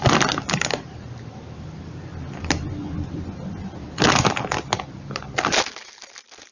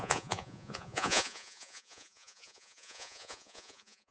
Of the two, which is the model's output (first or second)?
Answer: second